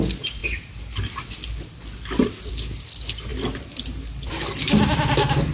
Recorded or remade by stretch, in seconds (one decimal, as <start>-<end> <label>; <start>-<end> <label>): 0.0-5.5 recorded